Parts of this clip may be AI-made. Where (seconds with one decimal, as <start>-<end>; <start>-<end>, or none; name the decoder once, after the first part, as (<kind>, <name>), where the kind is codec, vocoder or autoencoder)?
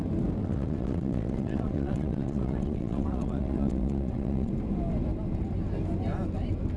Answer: 0.4-4.5 (vocoder, WaveNeXt)